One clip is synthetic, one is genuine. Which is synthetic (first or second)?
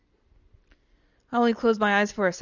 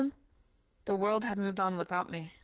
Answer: second